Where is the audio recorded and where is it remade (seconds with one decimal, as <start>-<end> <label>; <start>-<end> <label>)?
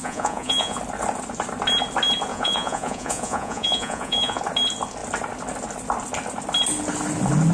0.0-0.8 remade; 0.8-2.3 recorded; 2.3-4.4 remade; 4.4-7.5 recorded